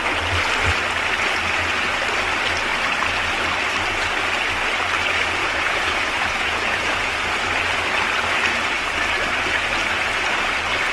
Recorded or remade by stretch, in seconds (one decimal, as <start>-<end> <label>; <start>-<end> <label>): 0.0-5.4 recorded; 5.4-7.1 remade; 7.1-10.9 recorded